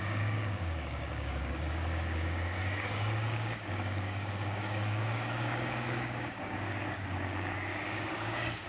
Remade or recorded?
remade